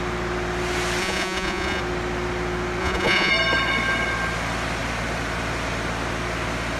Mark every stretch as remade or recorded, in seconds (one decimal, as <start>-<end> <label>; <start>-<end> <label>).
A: 0.0-1.0 recorded; 1.0-1.8 remade; 1.8-2.8 recorded; 2.8-3.3 remade; 3.3-6.8 recorded